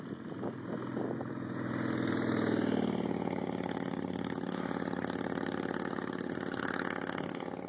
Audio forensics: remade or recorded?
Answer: recorded